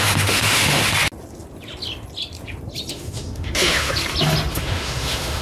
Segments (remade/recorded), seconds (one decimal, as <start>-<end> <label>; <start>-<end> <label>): 0.0-0.8 remade; 0.8-2.9 recorded; 2.9-3.9 remade; 3.9-4.5 recorded; 4.5-5.4 remade

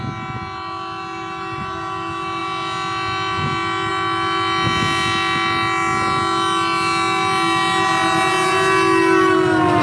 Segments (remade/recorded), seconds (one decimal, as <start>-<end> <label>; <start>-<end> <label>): 0.0-9.8 recorded

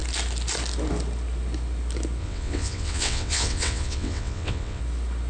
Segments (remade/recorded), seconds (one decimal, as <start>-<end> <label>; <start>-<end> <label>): 0.0-2.2 recorded; 2.2-4.8 remade; 4.8-5.3 recorded